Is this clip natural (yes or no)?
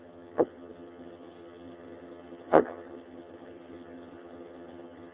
no